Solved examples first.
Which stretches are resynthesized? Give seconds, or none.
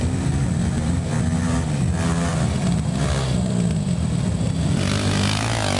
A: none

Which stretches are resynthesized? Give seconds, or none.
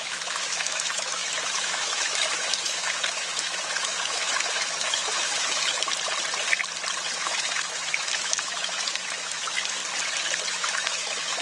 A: 0.0-5.9 (autoencoder, DAC-VAE); 7.2-9.8; 10.5-11.4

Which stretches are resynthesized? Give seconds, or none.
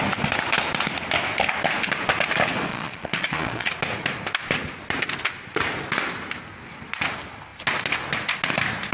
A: 2.7-3.7 (vocoder, Vocos)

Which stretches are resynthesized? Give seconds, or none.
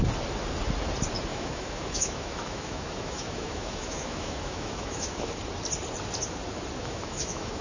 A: 1.3-5.3 (autoencoder, DAC-VAE); 6.8-7.6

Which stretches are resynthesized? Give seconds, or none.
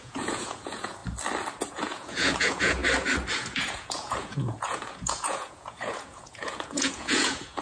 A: 0.0-1.0 (vocoder, Vocos); 1.7-2.8; 3.3-7.6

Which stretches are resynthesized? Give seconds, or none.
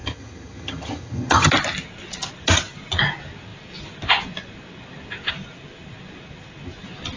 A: 0.0-1.5 (vocoder, HiFi-GAN)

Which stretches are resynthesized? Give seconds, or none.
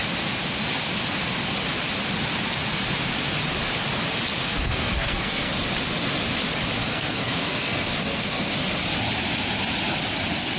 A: 4.5-5.5 (codec, SNAC); 6.9-8.5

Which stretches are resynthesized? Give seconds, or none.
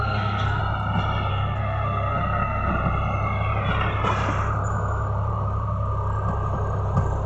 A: 0.0-0.6 (codec, SNAC); 1.3-2.7